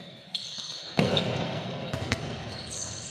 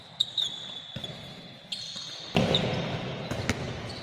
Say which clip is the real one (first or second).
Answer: second